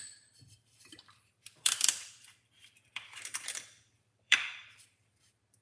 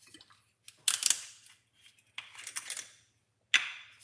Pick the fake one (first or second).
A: first